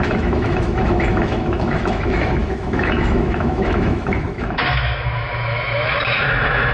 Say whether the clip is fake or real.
fake